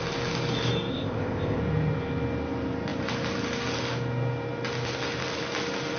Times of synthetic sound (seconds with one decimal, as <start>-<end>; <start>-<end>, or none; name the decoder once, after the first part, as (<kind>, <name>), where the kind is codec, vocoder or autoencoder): 0.9-1.6 (codec, ZipCodec)